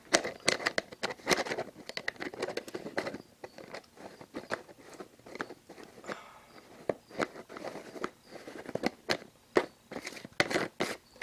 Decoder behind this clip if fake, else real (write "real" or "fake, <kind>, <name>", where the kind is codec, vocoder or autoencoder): real